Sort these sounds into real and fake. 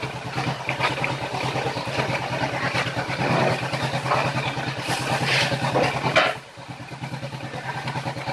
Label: real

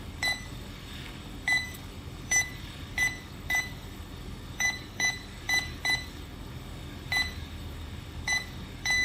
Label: fake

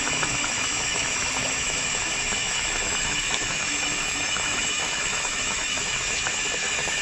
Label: fake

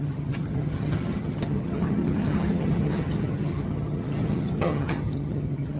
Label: fake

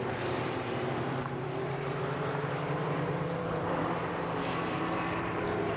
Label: fake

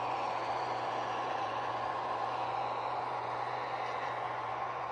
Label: fake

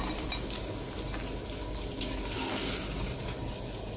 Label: real